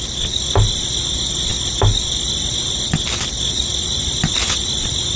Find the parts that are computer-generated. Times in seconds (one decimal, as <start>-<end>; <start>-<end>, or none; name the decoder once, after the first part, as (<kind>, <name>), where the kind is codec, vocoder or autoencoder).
none